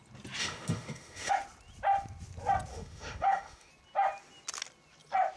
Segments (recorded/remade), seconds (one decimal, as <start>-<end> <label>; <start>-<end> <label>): 0.0-0.4 recorded; 0.4-1.3 remade; 1.3-2.7 recorded; 2.7-3.7 remade; 3.7-5.4 recorded